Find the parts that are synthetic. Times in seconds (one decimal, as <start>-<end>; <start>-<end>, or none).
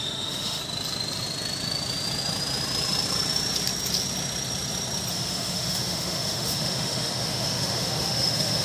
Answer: 0.0-0.6; 5.1-8.6